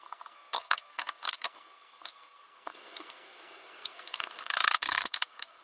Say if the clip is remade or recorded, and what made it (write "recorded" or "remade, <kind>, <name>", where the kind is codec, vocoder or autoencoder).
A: remade, codec, SNAC